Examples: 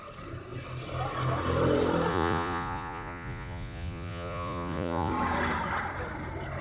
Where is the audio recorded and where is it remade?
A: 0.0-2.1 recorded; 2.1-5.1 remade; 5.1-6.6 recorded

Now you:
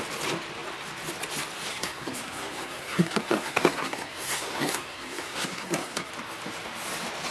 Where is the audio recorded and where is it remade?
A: 0.0-1.7 recorded; 1.7-6.1 remade; 6.1-7.3 recorded

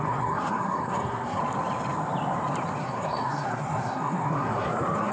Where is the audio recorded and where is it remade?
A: 0.0-1.4 remade; 1.4-2.8 recorded; 2.8-5.1 remade

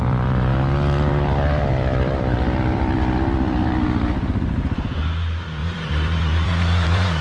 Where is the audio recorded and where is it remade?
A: 0.0-0.5 remade; 0.5-1.1 recorded; 1.1-7.2 remade

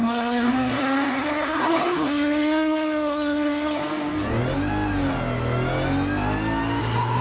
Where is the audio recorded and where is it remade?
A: 0.0-3.8 remade; 3.8-6.8 recorded; 6.8-7.2 remade

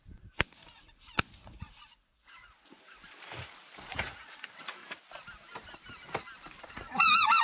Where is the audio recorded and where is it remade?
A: 0.0-3.0 remade; 3.0-3.8 recorded; 3.8-4.8 remade; 4.8-6.7 recorded; 6.7-7.4 remade

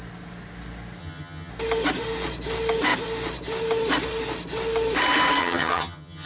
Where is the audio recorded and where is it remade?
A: 0.0-1.0 recorded; 1.0-1.5 remade; 1.5-5.4 recorded; 5.4-6.3 remade